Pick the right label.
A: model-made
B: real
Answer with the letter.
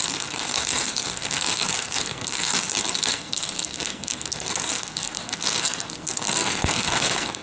A